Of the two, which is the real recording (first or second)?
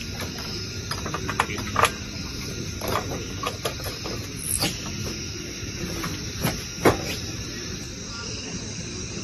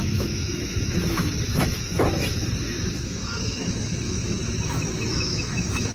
first